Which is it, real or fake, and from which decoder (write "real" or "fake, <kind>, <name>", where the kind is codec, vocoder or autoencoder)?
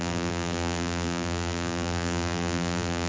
fake, vocoder, BigVGAN v2